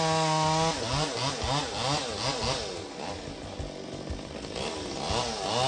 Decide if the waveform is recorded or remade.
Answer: recorded